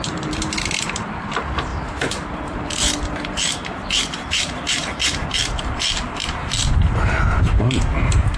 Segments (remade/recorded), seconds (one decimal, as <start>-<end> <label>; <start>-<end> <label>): 0.0-8.4 remade